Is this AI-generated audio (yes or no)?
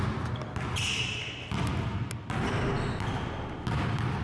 no